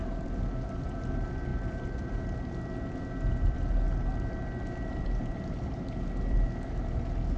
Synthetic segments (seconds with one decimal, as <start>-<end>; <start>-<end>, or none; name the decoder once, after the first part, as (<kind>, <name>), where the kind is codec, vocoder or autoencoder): 1.5-2.5 (vocoder, BigVGAN v2)